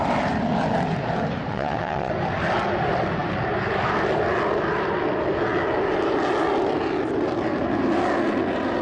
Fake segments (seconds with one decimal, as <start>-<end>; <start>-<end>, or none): 1.5-2.1